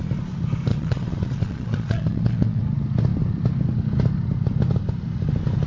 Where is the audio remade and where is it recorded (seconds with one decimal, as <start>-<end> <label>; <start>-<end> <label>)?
0.0-0.7 recorded; 0.7-2.6 remade; 2.6-5.7 recorded